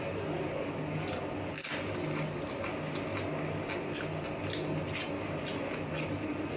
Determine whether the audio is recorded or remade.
recorded